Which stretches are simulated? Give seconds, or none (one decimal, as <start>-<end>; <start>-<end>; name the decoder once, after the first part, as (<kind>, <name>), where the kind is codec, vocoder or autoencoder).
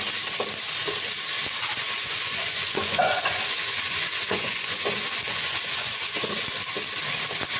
1.8-6.4 (vocoder, Vocos)